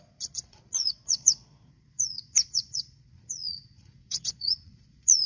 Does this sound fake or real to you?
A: fake